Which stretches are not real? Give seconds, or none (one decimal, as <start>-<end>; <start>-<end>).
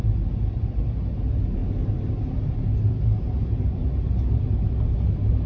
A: none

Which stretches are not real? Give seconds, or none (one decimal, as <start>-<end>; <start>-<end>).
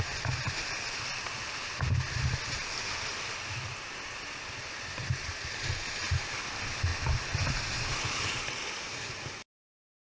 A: none